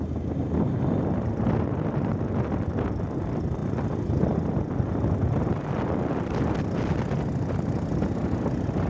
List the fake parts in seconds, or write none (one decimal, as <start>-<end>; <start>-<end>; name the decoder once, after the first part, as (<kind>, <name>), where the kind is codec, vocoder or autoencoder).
none